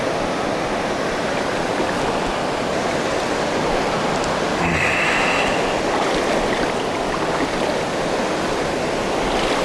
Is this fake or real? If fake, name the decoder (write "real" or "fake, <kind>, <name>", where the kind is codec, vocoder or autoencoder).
real